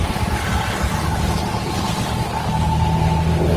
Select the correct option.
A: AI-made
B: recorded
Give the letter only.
B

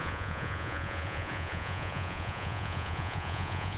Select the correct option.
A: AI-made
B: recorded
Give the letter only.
A